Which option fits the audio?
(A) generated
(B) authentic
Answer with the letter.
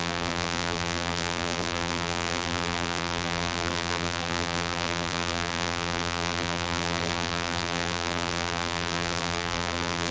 A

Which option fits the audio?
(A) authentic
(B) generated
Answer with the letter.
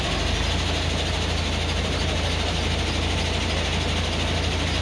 A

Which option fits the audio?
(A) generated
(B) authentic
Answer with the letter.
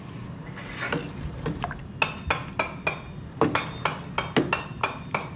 B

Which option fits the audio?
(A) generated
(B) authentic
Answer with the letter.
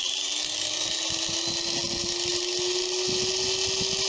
B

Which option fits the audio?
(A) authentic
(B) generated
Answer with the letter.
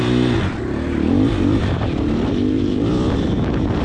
B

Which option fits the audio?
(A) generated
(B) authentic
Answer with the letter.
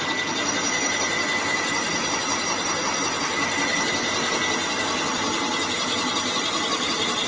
B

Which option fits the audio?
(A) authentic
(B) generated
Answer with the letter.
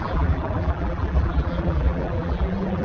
B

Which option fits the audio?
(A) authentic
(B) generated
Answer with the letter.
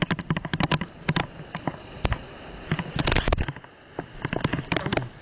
A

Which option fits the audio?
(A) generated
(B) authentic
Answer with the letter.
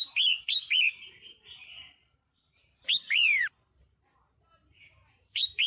A